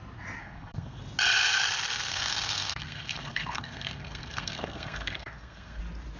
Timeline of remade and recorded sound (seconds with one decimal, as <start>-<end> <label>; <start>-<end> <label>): 0.0-0.4 recorded; 0.4-1.0 remade; 1.0-2.1 recorded; 2.1-5.8 remade; 5.8-6.2 recorded